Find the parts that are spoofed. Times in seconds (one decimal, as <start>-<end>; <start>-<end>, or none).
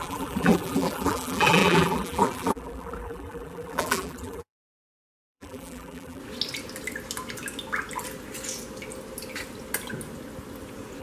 0.0-6.2